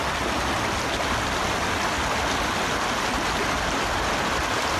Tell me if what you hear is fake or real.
real